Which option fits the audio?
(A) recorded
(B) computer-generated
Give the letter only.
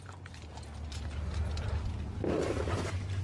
A